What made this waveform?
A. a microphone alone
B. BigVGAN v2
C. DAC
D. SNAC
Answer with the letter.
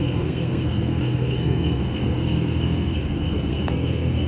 D